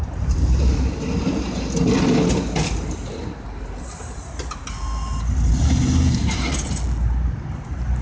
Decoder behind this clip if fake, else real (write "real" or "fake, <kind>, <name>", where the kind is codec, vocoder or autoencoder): real